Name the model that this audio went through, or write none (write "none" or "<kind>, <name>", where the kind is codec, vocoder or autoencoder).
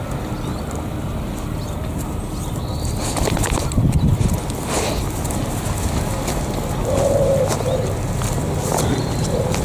none